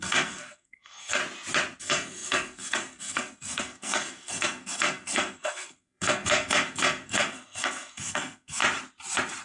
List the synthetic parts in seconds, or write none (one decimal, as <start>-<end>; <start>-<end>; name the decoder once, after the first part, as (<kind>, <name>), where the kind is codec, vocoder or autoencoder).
0.0-1.2 (codec, SNAC); 1.8-8.6